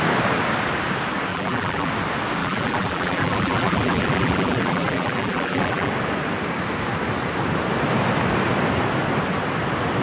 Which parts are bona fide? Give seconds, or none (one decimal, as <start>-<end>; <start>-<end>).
0.0-1.3; 1.9-2.4; 5.9-10.0